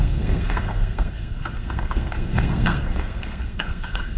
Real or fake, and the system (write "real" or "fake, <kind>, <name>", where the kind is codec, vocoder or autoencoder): fake, codec, SNAC